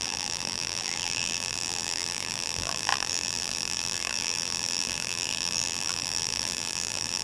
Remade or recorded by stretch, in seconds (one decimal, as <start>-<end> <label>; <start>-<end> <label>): 0.0-7.2 remade